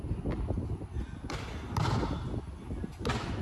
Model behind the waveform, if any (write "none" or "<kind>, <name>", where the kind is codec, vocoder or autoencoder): none